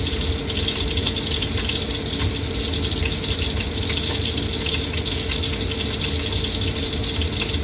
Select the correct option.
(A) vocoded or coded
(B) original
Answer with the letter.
B